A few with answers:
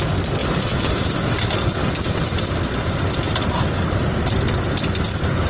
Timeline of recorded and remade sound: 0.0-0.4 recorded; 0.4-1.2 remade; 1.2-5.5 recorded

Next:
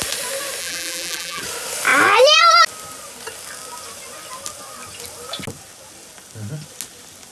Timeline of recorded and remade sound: 0.0-0.6 recorded; 0.6-1.4 remade; 1.4-7.3 recorded

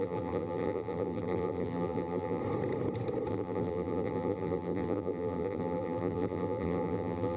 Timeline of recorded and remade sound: 0.0-2.4 remade; 2.4-3.3 recorded; 3.3-7.4 remade

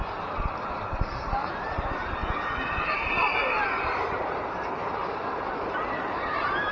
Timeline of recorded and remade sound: 0.0-2.2 remade; 2.2-2.8 recorded; 2.8-5.0 remade; 5.0-5.6 recorded; 5.6-6.7 remade